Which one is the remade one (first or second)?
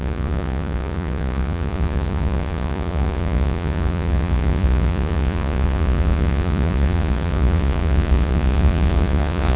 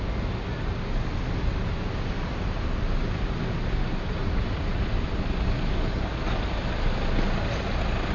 first